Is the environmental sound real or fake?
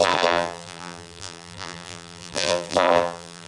fake